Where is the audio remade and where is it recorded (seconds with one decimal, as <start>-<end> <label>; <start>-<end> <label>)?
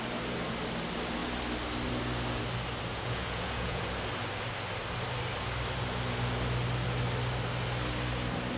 0.0-2.9 recorded; 2.9-3.8 remade; 3.8-8.6 recorded